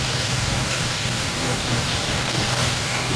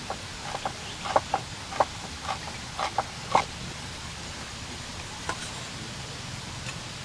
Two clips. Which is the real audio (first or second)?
second